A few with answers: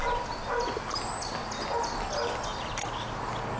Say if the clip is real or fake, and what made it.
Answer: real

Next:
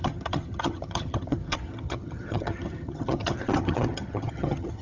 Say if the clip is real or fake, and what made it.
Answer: fake, vocoder, HiFi-GAN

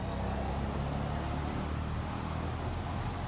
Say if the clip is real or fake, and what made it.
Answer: real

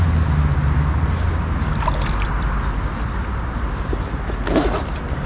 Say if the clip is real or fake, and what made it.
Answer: real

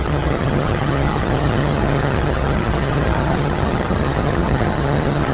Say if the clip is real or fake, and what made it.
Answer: fake, vocoder, HiFi-GAN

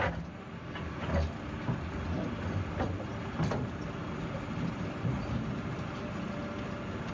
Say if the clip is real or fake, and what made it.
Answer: real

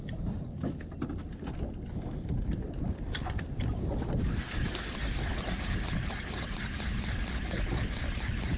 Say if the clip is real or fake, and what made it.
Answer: real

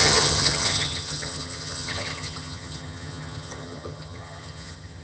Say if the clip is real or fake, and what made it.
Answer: fake, vocoder, HiFi-GAN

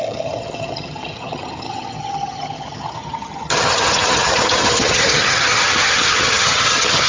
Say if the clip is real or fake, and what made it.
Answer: fake, vocoder, HiFi-GAN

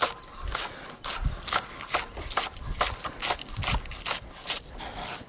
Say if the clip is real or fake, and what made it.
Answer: real